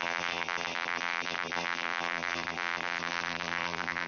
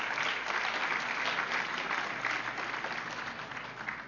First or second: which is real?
second